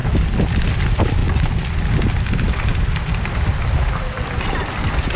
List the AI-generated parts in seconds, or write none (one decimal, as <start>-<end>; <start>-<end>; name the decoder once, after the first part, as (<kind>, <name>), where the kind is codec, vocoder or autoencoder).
0.0-5.2 (vocoder, BigVGAN v2)